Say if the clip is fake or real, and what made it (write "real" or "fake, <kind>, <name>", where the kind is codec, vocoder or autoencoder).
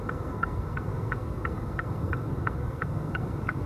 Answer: fake, codec, SNAC